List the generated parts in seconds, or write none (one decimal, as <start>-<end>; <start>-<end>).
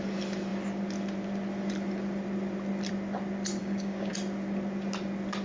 3.6-4.1